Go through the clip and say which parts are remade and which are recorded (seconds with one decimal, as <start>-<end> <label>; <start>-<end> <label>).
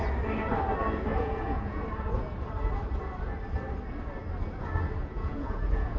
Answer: 0.0-1.1 recorded; 1.1-1.8 remade; 1.8-5.0 recorded; 5.0-6.0 remade